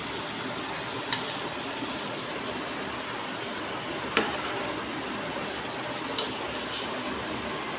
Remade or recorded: recorded